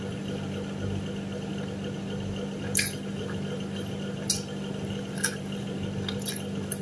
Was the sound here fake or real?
real